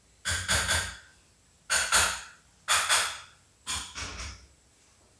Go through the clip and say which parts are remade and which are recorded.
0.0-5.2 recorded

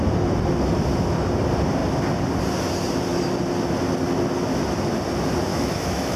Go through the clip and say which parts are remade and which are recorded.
0.0-5.5 recorded; 5.5-6.2 remade

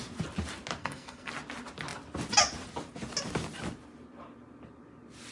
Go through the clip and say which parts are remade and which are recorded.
0.0-0.8 recorded; 0.8-1.3 remade; 1.3-5.3 recorded

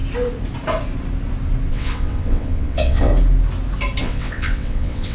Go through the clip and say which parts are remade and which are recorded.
0.0-1.7 recorded; 1.7-3.1 remade; 3.1-4.0 recorded; 4.0-5.1 remade

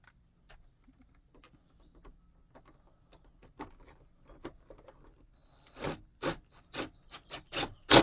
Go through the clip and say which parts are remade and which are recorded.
0.0-8.0 recorded

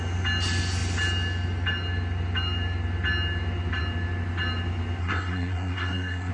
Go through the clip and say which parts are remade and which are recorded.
0.0-5.0 recorded; 5.0-6.3 remade

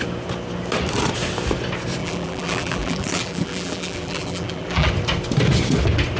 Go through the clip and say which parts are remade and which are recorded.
0.0-2.0 recorded; 2.0-4.9 remade; 4.9-6.2 recorded